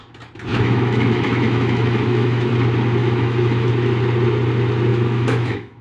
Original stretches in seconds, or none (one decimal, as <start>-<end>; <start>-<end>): 0.0-0.5; 2.5-3.0; 3.7-4.9